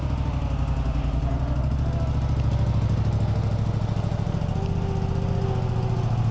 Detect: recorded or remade recorded